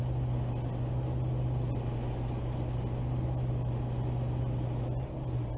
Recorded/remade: recorded